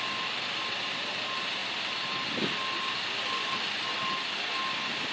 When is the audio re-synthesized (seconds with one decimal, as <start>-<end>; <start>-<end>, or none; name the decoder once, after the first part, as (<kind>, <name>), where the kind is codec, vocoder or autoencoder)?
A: none